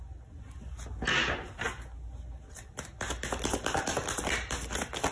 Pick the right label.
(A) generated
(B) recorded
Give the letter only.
B